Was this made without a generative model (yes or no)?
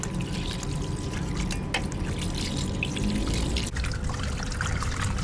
yes